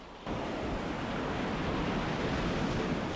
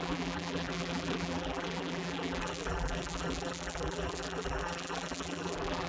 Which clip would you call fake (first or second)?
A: second